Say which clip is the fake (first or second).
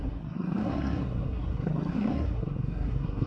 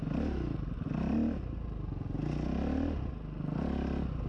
first